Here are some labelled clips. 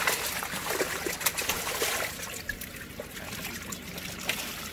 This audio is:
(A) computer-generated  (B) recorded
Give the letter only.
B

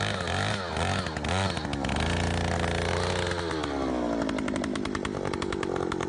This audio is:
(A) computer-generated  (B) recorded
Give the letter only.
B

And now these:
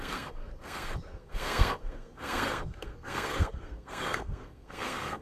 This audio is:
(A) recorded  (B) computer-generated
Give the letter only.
B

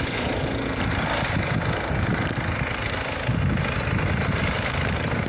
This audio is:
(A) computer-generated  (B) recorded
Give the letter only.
B